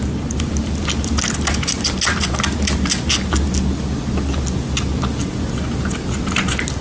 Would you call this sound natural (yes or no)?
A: yes